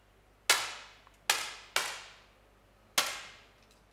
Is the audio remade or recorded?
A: recorded